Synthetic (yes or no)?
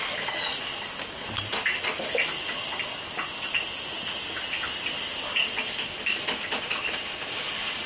no